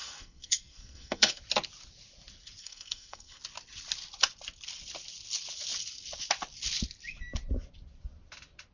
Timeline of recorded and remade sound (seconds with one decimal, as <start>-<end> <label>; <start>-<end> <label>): 0.0-1.4 remade; 1.4-2.6 recorded; 2.6-3.4 remade; 3.4-8.7 recorded